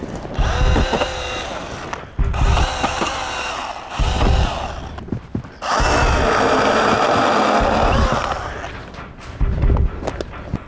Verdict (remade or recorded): recorded